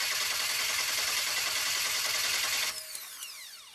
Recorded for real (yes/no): yes